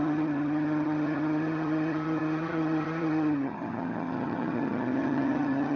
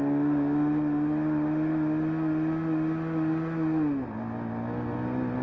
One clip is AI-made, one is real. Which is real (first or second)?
second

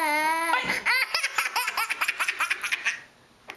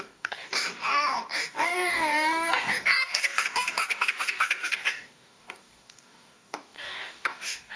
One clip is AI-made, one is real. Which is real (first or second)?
first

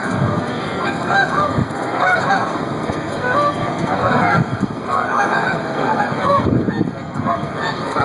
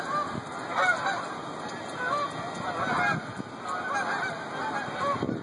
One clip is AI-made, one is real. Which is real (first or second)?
second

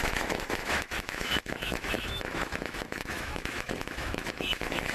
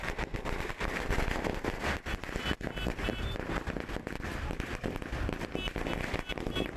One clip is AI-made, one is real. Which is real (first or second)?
second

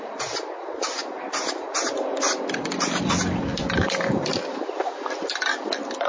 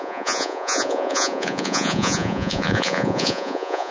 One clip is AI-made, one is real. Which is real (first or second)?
first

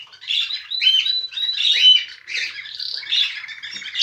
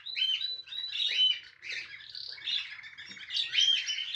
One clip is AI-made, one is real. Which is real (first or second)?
second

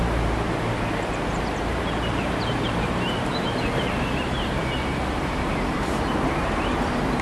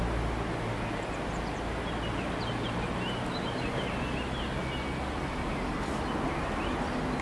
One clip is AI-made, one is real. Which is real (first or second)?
second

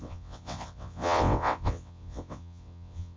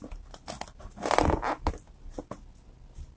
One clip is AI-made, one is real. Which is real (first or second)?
second